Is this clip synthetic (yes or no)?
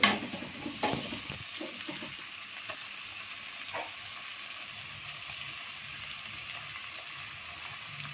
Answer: no